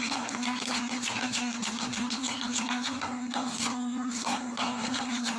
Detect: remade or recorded remade